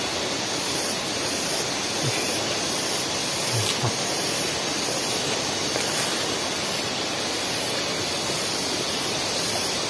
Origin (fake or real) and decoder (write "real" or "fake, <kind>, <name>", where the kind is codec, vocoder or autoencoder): real